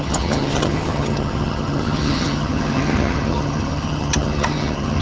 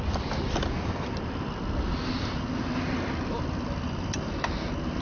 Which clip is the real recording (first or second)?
second